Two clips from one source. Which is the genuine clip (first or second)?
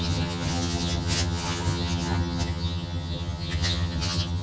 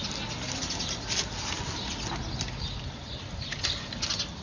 second